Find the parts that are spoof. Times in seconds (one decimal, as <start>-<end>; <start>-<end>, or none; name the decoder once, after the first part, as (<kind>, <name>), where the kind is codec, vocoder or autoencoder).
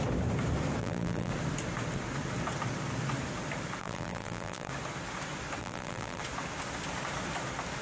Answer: 0.8-1.3 (vocoder, BigVGAN v2); 3.8-4.7; 5.6-6.2